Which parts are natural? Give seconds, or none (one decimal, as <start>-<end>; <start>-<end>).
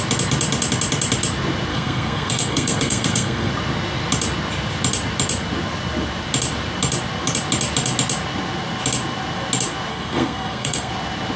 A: 0.0-1.7; 3.5-9.9; 10.9-11.4